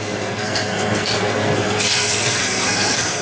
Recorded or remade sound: remade